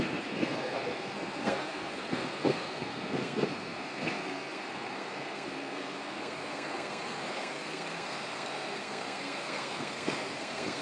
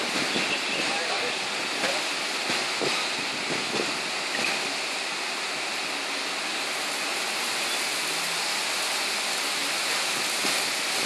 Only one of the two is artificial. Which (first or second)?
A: first